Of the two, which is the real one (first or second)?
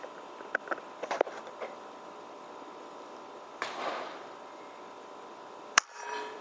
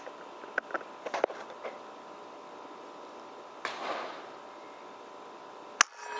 second